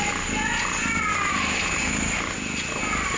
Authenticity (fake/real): real